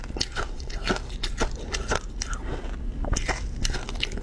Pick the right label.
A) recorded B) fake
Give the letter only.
A